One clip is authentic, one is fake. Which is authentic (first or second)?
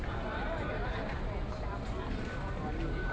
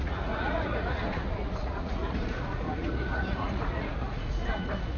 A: first